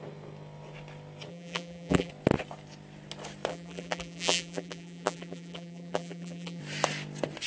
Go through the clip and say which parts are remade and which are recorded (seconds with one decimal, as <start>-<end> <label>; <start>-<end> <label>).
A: 0.0-1.3 recorded; 1.3-2.1 remade; 2.1-3.5 recorded; 3.5-6.6 remade; 6.6-7.5 recorded